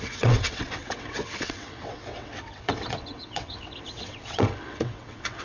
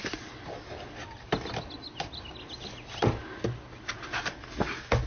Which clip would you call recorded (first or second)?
second